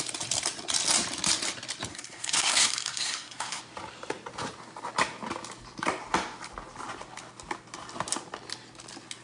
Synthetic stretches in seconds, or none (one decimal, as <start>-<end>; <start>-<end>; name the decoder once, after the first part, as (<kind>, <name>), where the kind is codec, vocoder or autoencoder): 1.9-3.6 (codec, SNAC)